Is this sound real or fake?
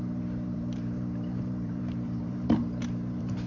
fake